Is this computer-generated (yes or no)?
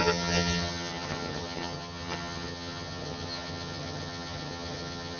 yes